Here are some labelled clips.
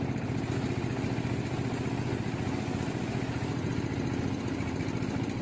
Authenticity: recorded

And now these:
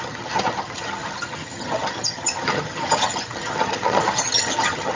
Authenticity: remade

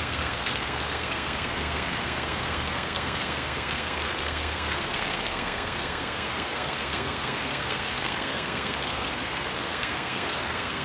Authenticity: remade